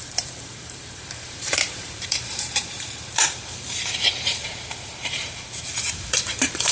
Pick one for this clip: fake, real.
fake